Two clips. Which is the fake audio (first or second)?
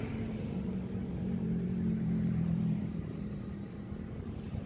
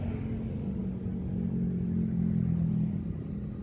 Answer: first